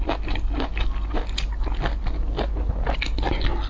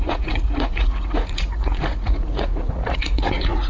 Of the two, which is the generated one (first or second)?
second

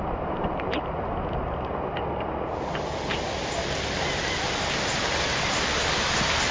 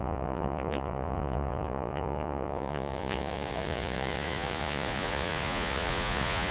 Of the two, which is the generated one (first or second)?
second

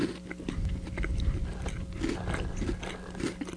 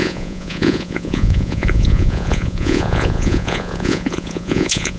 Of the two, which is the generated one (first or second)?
second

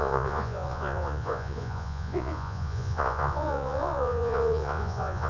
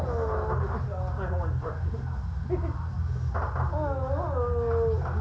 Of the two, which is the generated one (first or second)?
first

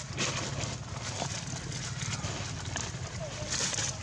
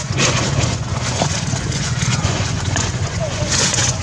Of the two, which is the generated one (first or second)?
second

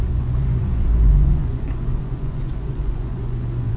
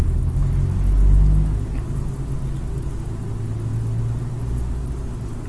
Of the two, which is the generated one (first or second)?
first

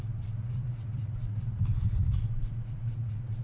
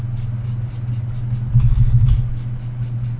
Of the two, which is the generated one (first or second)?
first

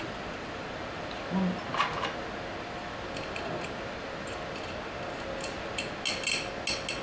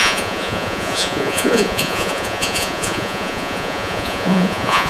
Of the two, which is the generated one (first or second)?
second